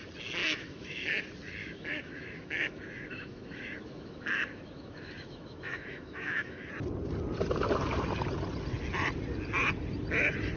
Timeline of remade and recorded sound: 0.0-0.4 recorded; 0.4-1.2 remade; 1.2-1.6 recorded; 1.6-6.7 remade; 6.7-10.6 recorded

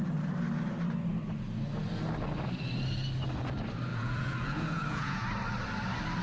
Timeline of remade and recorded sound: 0.0-3.9 recorded; 3.9-5.2 remade; 5.2-6.2 recorded

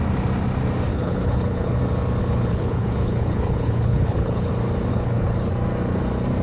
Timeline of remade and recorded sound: 0.0-0.9 recorded; 0.9-1.8 remade; 1.8-2.2 recorded; 2.2-4.5 remade; 4.5-4.9 recorded; 4.9-5.5 remade; 5.5-6.4 recorded

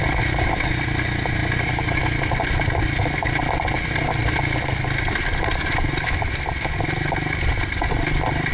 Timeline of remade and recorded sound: 0.0-8.5 recorded

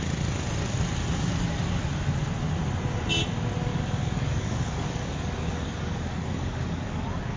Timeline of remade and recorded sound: 0.0-3.7 recorded; 3.7-7.4 remade

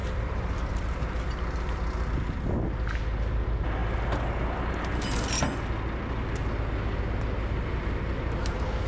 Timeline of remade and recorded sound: 0.0-8.9 recorded

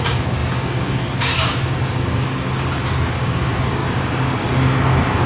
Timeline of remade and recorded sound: 0.0-5.3 remade

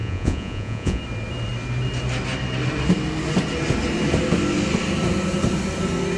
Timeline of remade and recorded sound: 0.0-1.0 remade; 1.0-6.2 recorded